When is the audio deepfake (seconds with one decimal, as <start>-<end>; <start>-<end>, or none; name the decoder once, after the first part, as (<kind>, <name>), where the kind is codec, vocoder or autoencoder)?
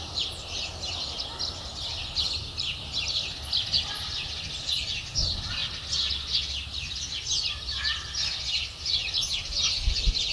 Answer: none